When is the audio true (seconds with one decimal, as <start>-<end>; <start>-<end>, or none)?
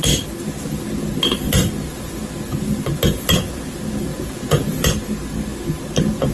0.0-4.1; 4.9-6.3